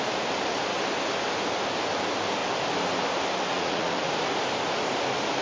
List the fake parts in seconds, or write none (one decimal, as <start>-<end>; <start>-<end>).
3.5-4.1